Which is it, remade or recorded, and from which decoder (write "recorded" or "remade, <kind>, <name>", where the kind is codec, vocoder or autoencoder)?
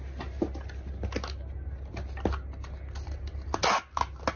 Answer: recorded